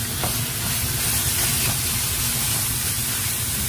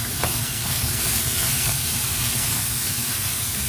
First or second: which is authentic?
first